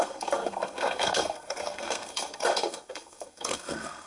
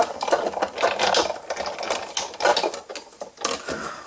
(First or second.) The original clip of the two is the second